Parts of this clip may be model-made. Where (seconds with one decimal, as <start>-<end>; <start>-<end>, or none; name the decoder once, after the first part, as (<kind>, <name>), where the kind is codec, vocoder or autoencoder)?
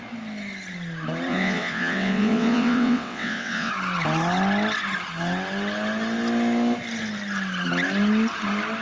1.3-3.7 (vocoder, WaveNeXt)